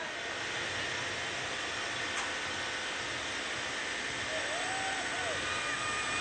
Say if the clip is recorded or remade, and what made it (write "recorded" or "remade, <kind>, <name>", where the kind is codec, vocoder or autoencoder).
recorded